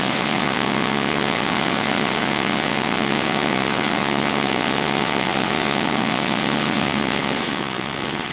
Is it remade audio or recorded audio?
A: remade